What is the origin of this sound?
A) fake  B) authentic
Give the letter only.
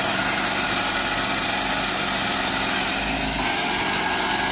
B